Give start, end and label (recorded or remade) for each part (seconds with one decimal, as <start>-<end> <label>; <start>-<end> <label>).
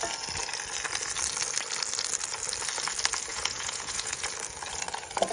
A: 0.0-3.3 recorded; 3.3-4.3 remade; 4.3-5.3 recorded